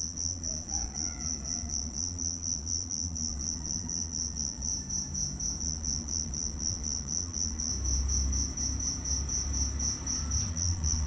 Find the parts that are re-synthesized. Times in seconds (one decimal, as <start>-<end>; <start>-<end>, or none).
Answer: 0.0-4.7; 5.6-7.7; 10.5-11.1